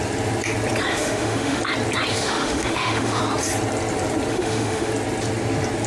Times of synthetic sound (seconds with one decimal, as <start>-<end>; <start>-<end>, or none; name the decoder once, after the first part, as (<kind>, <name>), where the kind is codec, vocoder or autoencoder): 0.9-1.6 (autoencoder, DAC-VAE); 2.1-3.2; 4.3-4.9